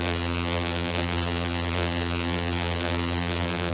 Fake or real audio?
fake